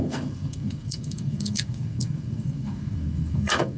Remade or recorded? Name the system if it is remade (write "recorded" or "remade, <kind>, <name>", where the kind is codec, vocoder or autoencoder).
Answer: remade, codec, SNAC